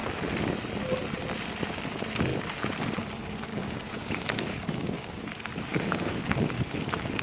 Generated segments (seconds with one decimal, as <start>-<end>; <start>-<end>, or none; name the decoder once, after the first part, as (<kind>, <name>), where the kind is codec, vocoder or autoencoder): 3.5-5.2 (codec, DAC); 5.7-6.8